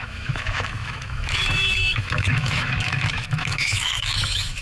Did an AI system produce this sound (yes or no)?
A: yes